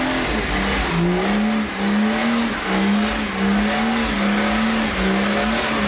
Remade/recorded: recorded